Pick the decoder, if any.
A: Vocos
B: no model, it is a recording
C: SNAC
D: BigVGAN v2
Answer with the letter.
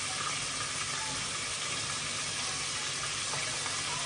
B